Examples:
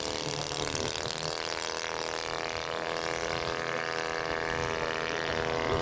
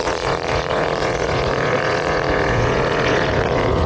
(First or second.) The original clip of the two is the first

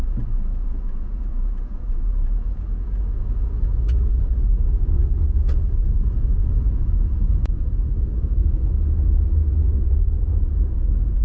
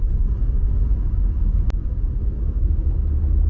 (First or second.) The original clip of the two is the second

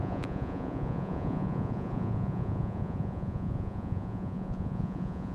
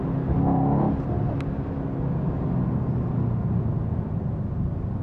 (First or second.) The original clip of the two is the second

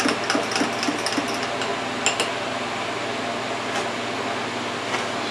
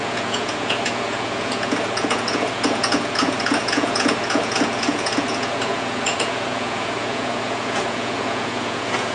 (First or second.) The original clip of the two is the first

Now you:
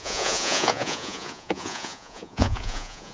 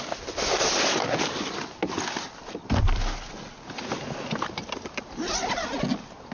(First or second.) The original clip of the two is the second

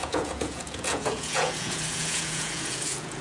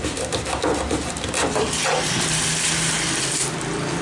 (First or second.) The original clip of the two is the second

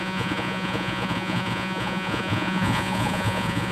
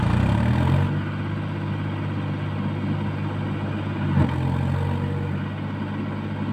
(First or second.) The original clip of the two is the second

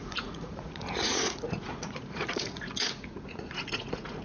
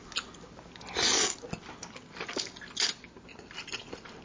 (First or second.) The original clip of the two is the second